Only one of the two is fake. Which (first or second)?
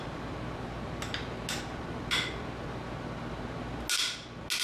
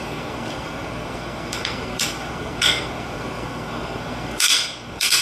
second